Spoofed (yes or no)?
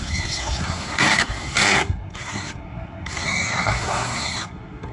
yes